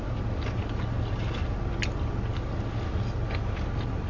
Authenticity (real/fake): real